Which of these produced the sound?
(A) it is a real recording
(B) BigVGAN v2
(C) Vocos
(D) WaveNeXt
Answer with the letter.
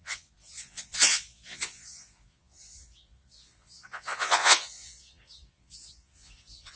C